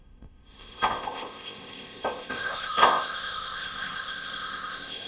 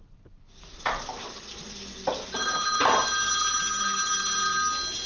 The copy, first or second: first